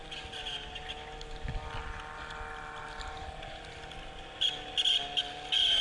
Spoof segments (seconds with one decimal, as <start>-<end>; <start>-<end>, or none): none